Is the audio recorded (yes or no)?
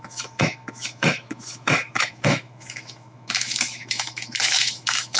no